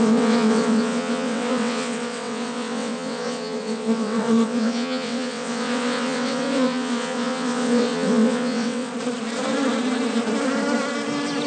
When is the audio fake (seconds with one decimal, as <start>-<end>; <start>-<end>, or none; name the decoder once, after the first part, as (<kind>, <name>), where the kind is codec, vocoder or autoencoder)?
0.0-8.9 (vocoder, WaveNeXt)

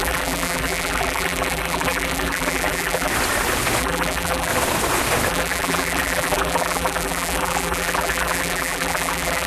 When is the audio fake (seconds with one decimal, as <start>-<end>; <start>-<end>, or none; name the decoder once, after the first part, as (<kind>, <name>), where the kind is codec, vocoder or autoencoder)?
0.0-3.1 (vocoder, BigVGAN v2); 3.8-4.5; 5.3-9.5

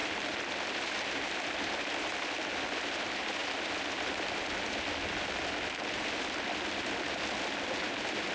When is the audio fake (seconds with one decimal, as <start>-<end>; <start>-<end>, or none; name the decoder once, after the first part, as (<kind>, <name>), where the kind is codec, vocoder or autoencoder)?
none